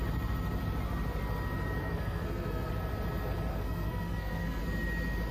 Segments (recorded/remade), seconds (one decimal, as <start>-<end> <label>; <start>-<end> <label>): 0.0-1.8 recorded; 1.8-2.7 remade; 2.7-3.5 recorded; 3.5-4.6 remade; 4.6-5.3 recorded

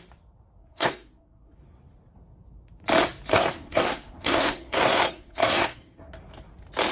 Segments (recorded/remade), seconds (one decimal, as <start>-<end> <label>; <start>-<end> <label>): 0.0-0.6 recorded; 0.6-1.6 remade; 1.6-3.3 recorded; 3.3-6.1 remade; 6.1-6.9 recorded

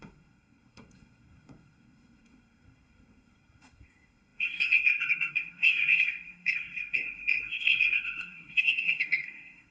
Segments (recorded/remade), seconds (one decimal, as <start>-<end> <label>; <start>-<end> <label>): 0.0-9.7 remade

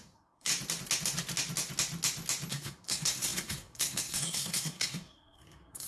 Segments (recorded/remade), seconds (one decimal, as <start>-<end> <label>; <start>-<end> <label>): 0.0-0.5 remade; 0.5-2.5 recorded; 2.5-5.9 remade

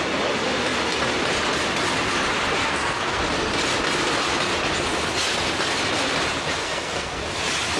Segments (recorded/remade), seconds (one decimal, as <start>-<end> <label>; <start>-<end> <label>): 0.0-2.6 recorded; 2.6-3.2 remade; 3.2-6.6 recorded; 6.6-7.2 remade; 7.2-7.8 recorded

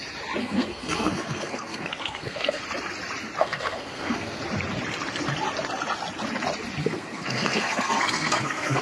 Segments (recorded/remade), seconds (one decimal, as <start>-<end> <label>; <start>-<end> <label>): 0.0-0.4 recorded; 0.4-2.6 remade; 2.6-3.4 recorded; 3.4-4.4 remade; 4.4-6.8 recorded; 6.8-8.8 remade